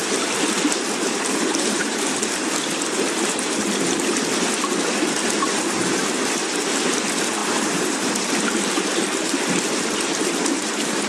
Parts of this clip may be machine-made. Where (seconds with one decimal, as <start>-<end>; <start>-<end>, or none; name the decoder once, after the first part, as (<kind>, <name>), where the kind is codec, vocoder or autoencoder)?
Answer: none